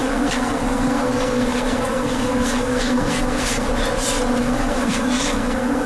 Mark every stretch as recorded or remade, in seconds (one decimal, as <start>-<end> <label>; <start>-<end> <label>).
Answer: 0.0-3.7 remade; 3.7-4.4 recorded; 4.4-5.9 remade